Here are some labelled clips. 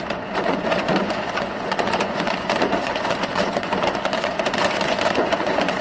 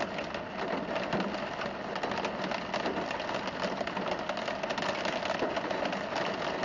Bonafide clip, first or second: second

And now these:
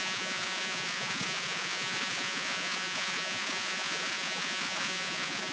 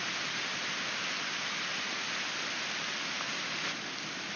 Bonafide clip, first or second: second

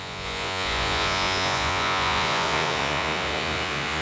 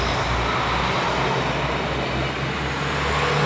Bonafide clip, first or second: second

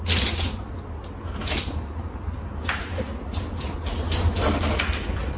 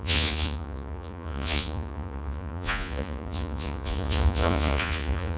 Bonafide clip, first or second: first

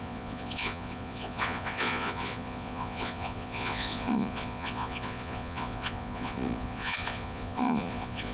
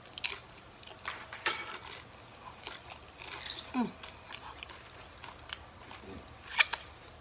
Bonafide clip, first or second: second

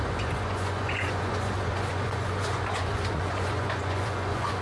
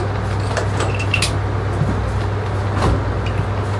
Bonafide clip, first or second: second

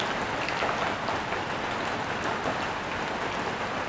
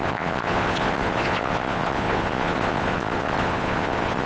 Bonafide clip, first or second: first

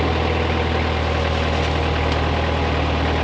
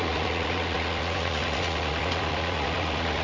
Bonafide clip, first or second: first